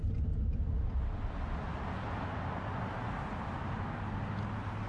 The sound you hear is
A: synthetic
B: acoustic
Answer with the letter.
B